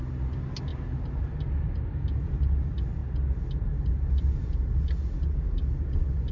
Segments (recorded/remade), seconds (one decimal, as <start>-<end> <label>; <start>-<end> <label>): 0.0-6.3 recorded